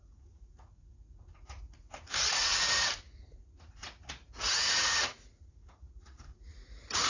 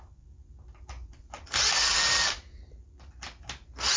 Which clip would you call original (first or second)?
second